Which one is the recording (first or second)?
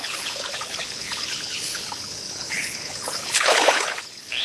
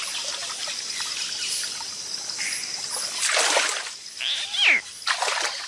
second